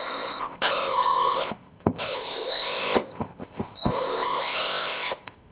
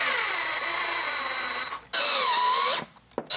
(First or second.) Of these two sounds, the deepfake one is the first